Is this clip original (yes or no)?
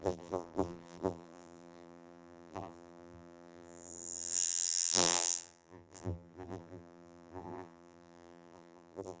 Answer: no